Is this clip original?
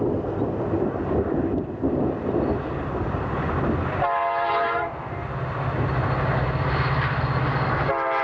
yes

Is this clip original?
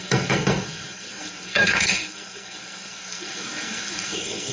no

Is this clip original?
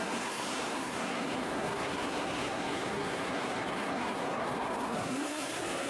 no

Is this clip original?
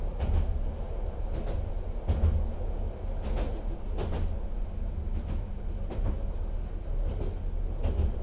yes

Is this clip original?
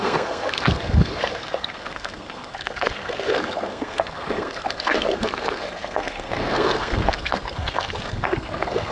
no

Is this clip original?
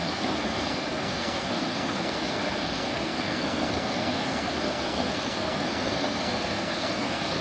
no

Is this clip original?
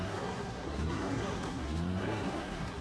no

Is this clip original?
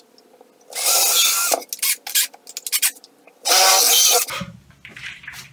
yes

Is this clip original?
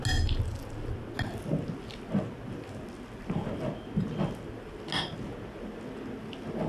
yes